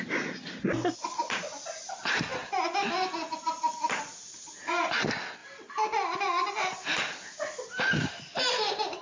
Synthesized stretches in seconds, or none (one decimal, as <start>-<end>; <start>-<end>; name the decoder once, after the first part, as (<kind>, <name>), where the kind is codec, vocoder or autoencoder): none